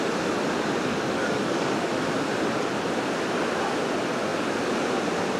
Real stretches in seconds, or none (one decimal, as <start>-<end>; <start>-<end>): 0.0-0.9; 1.9-5.4